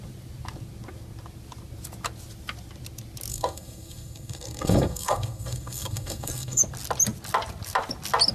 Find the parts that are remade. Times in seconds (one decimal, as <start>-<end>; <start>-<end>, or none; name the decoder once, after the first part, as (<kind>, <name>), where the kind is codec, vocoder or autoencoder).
3.3-6.6 (codec, SNAC)